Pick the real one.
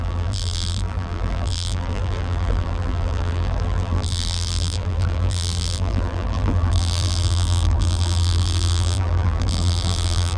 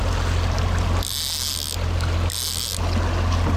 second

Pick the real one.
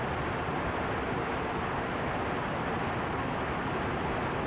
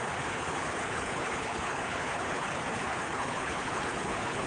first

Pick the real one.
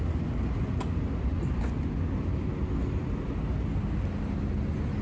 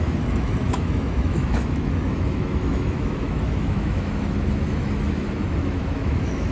first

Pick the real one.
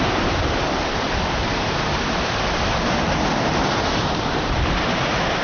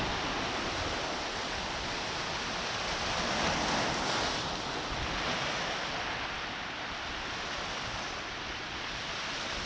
second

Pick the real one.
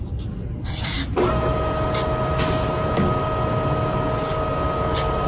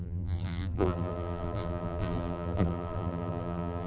first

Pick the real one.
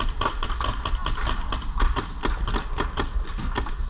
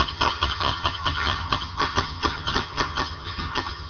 first